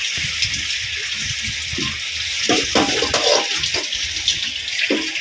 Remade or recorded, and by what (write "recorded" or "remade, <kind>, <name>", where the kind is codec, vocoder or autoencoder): recorded